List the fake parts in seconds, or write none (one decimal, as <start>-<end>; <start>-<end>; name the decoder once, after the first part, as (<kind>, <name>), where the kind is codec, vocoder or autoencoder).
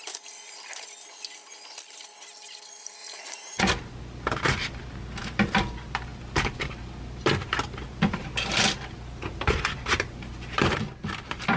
3.0-3.7 (vocoder, Vocos)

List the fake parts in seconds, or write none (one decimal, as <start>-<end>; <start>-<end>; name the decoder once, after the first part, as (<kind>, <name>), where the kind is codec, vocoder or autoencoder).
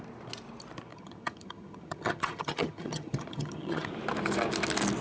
0.9-3.9 (vocoder, HiFi-GAN)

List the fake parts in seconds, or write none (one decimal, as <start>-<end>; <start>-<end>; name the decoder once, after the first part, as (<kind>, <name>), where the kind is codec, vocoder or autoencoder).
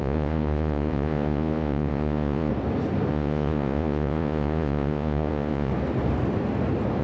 0.0-2.5 (vocoder, Vocos); 3.1-5.7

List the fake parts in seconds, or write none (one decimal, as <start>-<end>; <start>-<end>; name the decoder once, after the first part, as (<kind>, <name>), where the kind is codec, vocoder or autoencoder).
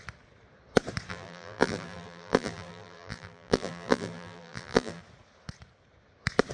1.1-5.0 (vocoder, BigVGAN v2)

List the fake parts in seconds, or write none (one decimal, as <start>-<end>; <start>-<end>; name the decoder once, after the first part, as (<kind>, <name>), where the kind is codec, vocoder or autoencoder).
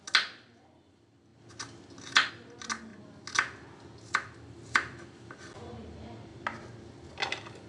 none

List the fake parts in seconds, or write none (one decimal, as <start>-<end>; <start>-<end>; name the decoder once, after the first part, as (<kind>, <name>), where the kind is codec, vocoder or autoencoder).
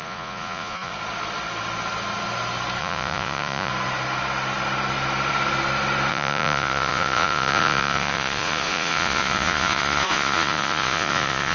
0.0-0.9 (vocoder, Vocos); 2.8-3.7; 6.1-11.5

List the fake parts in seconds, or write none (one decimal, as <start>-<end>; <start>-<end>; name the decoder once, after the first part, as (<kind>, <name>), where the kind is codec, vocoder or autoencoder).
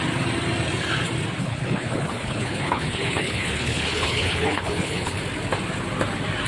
1.4-5.2 (codec, HILCodec)